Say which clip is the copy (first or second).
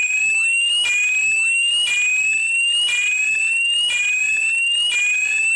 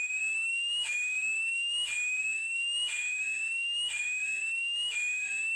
second